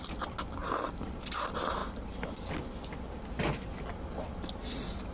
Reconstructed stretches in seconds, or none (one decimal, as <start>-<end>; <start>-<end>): 0.6-1.2